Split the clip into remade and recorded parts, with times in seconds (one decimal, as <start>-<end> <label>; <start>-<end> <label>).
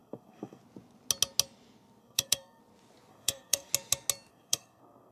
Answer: 0.0-0.6 remade; 0.6-2.0 recorded; 2.0-2.6 remade; 2.6-3.1 recorded; 3.1-3.7 remade; 3.7-4.3 recorded; 4.3-5.1 remade